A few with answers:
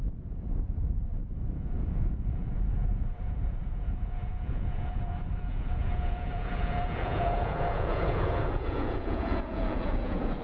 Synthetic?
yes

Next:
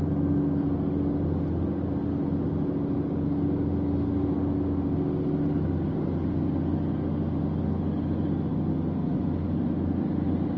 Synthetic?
no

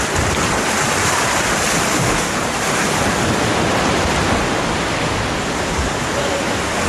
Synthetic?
no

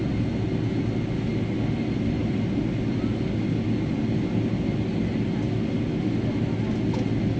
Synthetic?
no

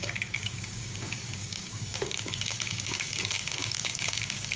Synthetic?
yes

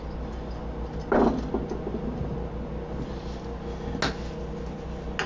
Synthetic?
no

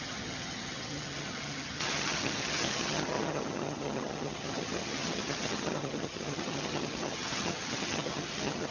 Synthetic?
yes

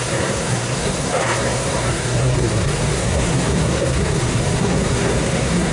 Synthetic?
yes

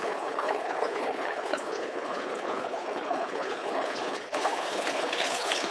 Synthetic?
yes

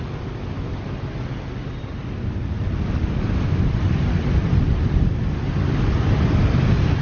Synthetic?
no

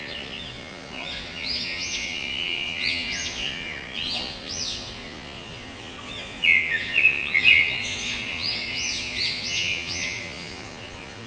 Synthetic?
yes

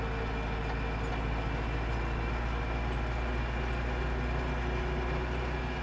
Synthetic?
no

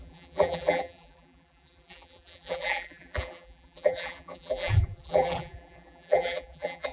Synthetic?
yes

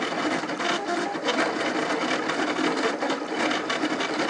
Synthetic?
no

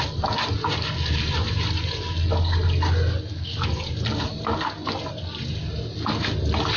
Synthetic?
no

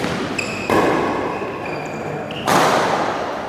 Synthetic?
no